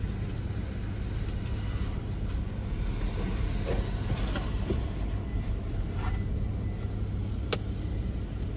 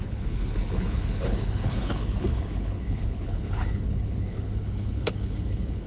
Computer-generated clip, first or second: second